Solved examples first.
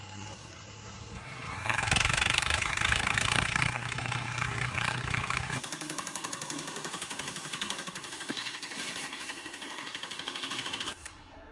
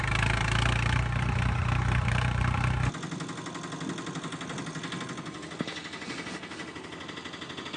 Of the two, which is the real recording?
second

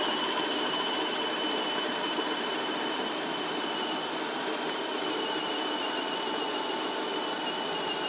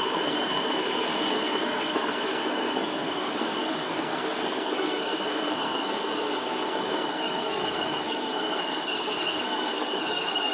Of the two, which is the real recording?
first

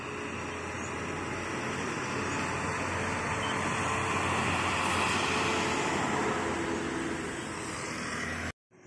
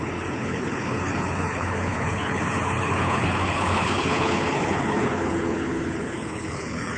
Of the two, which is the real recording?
first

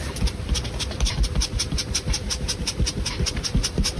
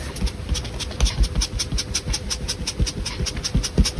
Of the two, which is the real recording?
second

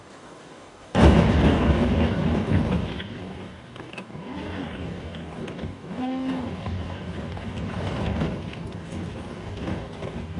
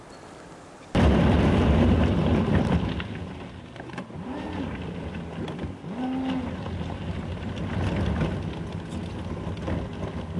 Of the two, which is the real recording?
second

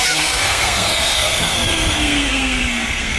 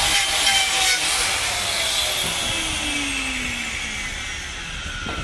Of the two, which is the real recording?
second